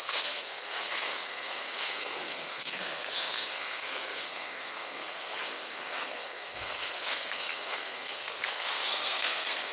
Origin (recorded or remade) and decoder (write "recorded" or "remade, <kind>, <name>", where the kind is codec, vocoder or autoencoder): remade, codec, SNAC